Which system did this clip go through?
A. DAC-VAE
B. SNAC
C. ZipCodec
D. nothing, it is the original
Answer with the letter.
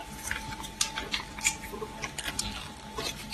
D